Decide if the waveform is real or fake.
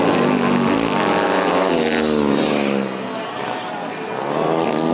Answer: real